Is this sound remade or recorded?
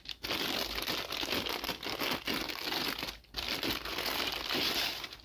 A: recorded